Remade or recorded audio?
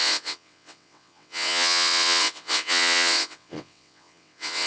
remade